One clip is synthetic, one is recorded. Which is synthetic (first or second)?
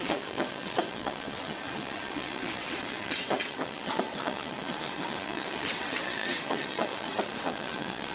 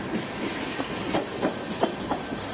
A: first